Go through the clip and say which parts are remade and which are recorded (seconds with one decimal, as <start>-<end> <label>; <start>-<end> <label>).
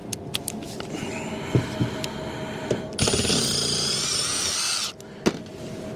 0.0-1.3 remade; 1.3-6.0 recorded